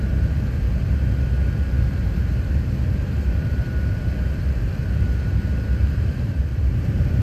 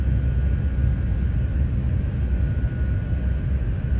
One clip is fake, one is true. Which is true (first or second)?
second